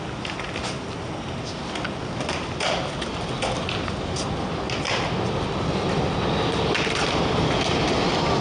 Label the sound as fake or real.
real